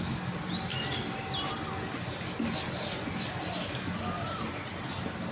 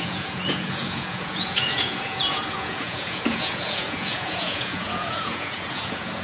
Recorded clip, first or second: first